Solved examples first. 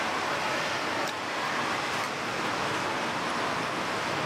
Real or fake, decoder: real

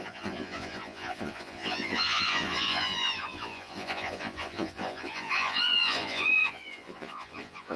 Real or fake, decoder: fake, vocoder, Vocos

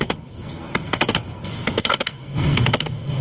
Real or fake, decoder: fake, codec, SNAC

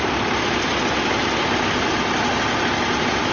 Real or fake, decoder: real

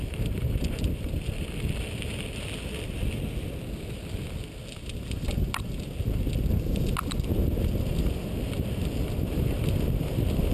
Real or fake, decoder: real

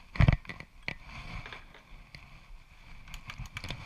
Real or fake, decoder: real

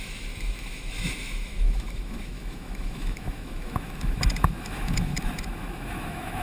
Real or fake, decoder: fake, autoencoder, DAC-VAE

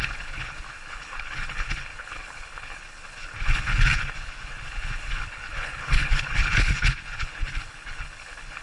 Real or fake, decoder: fake, codec, HILCodec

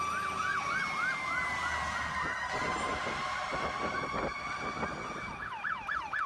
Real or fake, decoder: real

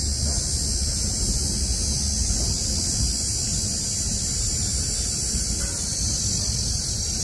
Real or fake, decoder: real